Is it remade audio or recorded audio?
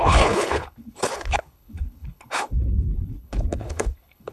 remade